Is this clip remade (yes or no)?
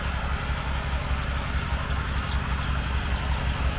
no